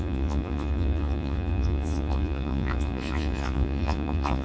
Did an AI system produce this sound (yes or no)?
yes